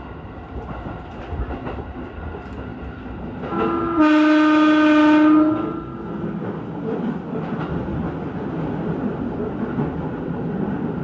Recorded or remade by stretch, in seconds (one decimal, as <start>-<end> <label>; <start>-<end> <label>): 0.0-11.0 recorded